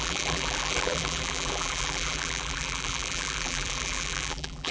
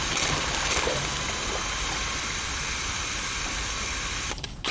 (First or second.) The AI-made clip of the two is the first